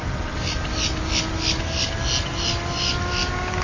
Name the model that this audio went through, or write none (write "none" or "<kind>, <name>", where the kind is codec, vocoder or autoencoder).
none